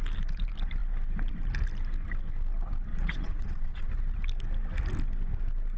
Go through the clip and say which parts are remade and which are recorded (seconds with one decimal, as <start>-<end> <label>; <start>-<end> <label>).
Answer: 0.0-2.9 recorded; 2.9-3.9 remade; 3.9-5.8 recorded